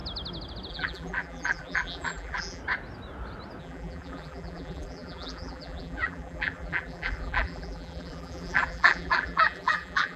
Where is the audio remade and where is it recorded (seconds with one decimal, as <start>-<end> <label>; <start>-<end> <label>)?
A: 0.0-0.7 recorded; 0.7-2.6 remade; 2.6-3.6 recorded; 3.6-10.2 remade